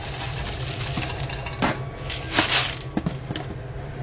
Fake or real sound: real